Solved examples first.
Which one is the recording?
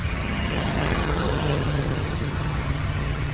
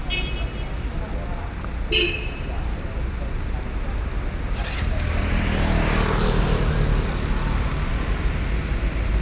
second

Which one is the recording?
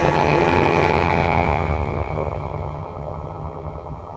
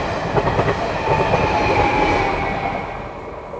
second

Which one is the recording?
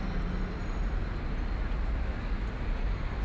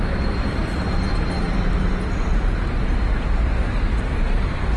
first